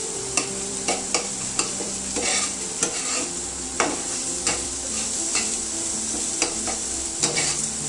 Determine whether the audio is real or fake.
fake